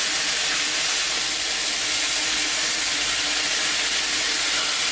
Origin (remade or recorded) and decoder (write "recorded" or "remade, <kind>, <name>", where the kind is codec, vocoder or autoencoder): recorded